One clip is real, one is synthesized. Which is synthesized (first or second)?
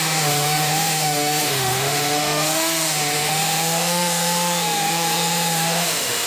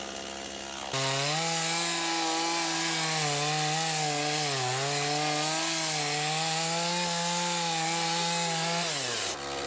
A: first